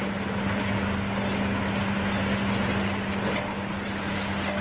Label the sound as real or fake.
real